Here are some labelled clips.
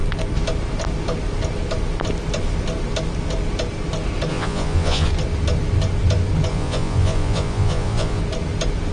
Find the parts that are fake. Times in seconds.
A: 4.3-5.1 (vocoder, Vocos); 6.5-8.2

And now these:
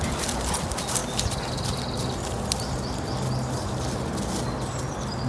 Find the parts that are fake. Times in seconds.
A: none

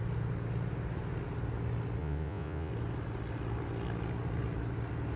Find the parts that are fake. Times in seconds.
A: 2.0-2.7 (vocoder, Vocos)

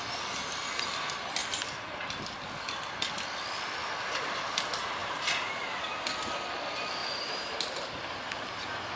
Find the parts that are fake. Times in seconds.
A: 5.0-6.0 (vocoder, BigVGAN v2); 7.0-7.9

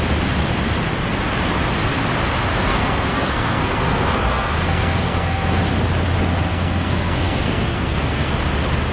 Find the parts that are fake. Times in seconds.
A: 2.5-5.6 (codec, SNAC); 6.5-8.3

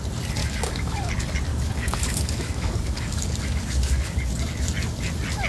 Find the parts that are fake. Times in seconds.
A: 0.4-1.1 (codec, DAC); 1.5-4.3